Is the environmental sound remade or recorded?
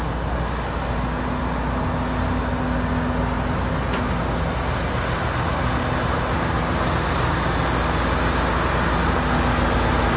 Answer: recorded